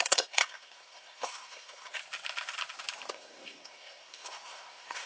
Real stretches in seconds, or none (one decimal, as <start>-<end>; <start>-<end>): 2.0-3.1